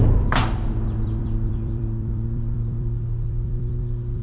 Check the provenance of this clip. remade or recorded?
remade